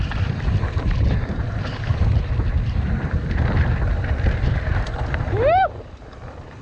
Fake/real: fake